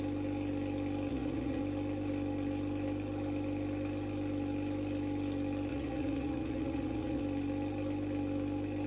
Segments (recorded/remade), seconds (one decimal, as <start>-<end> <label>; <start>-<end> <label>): 0.0-1.1 recorded; 1.1-1.6 remade; 1.6-5.7 recorded; 5.7-7.2 remade; 7.2-8.9 recorded